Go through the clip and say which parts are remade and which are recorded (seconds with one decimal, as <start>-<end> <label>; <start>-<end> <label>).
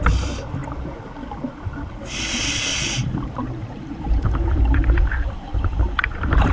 0.0-0.6 recorded; 0.6-1.9 remade; 1.9-2.7 recorded; 2.7-6.5 remade